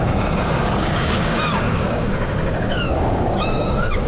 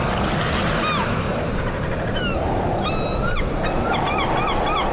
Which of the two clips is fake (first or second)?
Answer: first